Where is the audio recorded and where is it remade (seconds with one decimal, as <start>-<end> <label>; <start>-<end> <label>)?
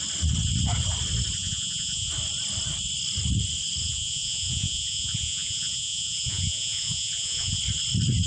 0.0-1.4 recorded; 1.4-2.1 remade; 2.1-3.8 recorded; 3.8-7.6 remade; 7.6-8.3 recorded